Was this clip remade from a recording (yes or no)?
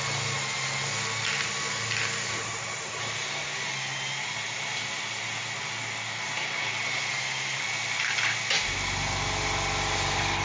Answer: no